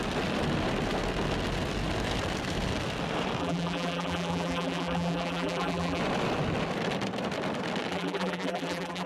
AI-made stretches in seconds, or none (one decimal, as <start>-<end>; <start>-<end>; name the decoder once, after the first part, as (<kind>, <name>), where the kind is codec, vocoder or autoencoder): 3.4-6.0 (vocoder, BigVGAN v2); 7.9-9.1

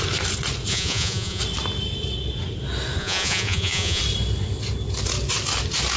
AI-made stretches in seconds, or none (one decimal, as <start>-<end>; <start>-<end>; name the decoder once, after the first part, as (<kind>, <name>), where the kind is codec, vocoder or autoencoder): 0.7-1.4 (vocoder, Vocos); 3.0-4.0